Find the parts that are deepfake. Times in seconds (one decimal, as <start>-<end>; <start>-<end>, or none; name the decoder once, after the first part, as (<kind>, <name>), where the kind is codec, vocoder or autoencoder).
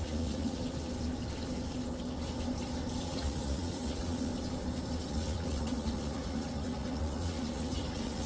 0.0-0.6 (vocoder, Vocos); 3.0-4.3; 5.1-8.3